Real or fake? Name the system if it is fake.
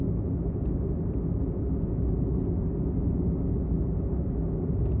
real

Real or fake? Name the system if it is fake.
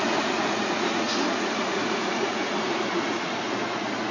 fake, vocoder, Vocos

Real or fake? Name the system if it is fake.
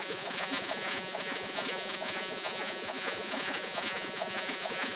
fake, vocoder, Vocos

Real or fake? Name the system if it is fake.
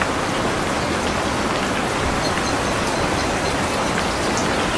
real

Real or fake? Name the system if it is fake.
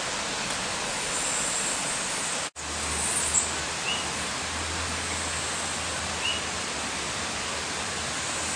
real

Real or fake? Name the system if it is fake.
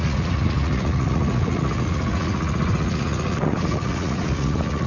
fake, vocoder, Vocos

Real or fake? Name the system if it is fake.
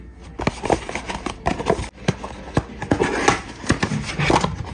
real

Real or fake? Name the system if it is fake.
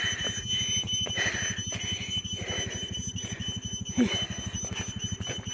real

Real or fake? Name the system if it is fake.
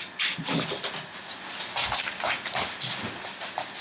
real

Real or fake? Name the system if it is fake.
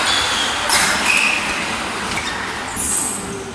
real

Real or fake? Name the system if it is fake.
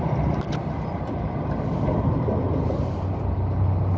real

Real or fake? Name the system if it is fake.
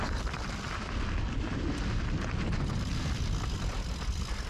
real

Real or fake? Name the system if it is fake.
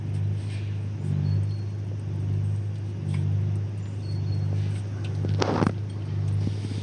real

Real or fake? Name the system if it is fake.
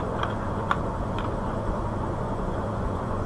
fake, vocoder, Vocos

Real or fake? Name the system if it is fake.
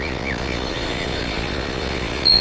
fake, vocoder, Vocos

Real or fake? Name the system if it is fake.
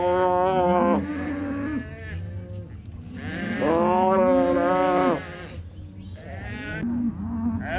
real